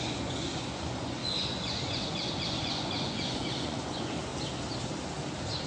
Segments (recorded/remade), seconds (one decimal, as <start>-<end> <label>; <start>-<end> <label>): 0.0-4.3 remade; 4.3-5.7 recorded